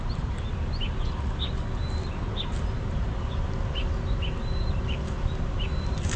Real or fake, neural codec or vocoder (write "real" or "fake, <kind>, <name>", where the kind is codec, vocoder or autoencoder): real